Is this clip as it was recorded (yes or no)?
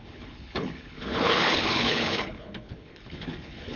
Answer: no